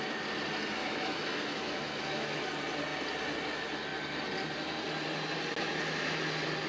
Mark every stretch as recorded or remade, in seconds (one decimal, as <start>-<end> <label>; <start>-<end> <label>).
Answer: 0.0-0.8 recorded; 0.8-2.5 remade; 2.5-6.7 recorded